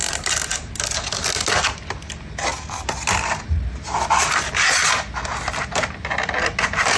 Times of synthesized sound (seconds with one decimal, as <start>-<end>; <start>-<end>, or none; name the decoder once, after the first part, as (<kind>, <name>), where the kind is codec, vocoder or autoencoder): none